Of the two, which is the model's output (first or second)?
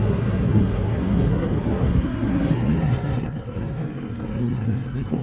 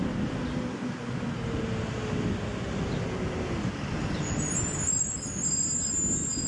first